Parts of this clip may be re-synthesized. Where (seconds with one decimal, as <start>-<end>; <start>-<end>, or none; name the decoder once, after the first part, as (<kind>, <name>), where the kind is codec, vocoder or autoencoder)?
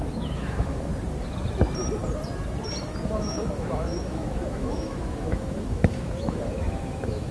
0.0-0.9 (autoencoder, DAC-VAE); 3.0-7.3